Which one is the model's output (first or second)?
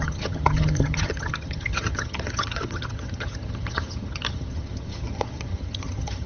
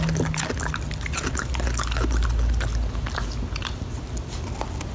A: first